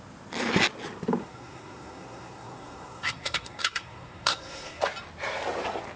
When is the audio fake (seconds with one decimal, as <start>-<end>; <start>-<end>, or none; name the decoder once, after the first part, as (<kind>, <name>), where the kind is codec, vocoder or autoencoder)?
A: 1.2-4.8 (codec, SNAC)

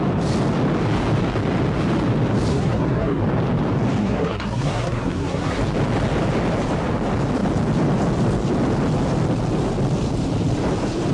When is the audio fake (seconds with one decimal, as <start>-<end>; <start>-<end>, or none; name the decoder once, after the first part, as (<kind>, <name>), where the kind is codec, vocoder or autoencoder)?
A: 2.5-3.2 (codec, SNAC); 4.0-5.6

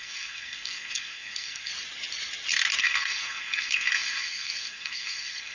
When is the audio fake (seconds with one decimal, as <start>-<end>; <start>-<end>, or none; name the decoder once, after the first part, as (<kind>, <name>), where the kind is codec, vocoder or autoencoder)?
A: 0.0-1.7 (codec, SNAC); 2.8-5.5

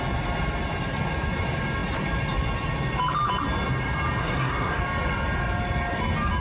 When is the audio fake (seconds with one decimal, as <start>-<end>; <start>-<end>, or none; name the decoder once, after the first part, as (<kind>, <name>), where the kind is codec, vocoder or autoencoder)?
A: 4.2-4.8 (codec, SNAC)